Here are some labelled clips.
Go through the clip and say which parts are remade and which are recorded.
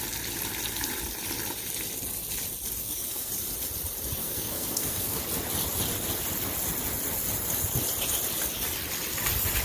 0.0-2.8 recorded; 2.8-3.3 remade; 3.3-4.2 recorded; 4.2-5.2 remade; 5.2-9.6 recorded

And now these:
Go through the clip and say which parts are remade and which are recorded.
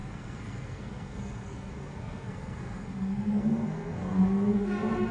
0.0-5.1 remade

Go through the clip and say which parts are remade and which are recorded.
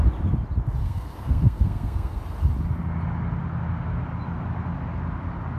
0.0-0.8 recorded; 0.8-2.2 remade; 2.2-5.6 recorded